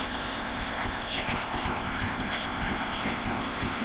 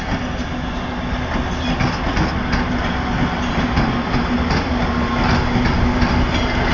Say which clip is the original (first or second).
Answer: second